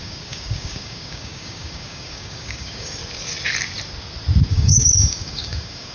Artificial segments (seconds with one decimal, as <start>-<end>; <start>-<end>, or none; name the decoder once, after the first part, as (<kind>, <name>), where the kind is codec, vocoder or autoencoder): 0.0-3.0 (codec, DAC); 4.5-5.9